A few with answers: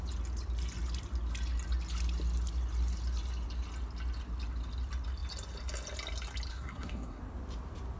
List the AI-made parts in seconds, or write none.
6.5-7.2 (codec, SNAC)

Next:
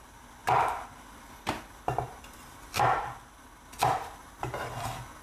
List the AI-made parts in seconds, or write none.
0.4-3.5 (vocoder, BigVGAN v2)

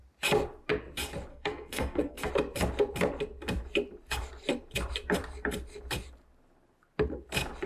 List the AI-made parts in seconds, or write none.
1.3-2.3 (codec, SNAC)

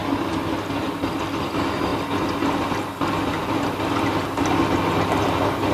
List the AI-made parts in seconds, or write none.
none

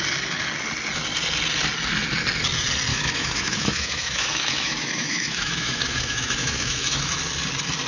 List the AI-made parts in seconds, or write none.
2.9-7.1 (autoencoder, DAC-VAE)

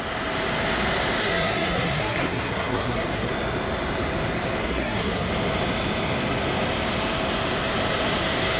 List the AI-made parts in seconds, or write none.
1.2-3.3 (codec, SNAC); 4.6-5.3

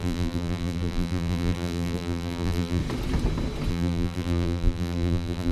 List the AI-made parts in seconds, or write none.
0.0-2.8 (vocoder, BigVGAN v2); 3.7-5.5